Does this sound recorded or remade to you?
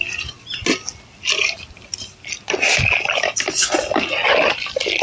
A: recorded